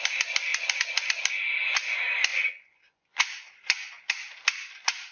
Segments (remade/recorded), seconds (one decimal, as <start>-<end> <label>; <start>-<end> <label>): 0.0-2.3 recorded; 2.3-4.1 remade; 4.1-5.1 recorded